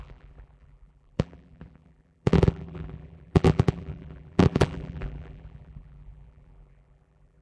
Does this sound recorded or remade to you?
remade